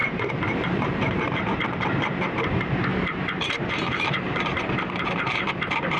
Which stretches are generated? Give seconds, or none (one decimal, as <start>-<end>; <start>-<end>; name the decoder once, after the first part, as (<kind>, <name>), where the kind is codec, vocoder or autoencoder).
0.0-2.5 (vocoder, BigVGAN v2); 2.9-5.5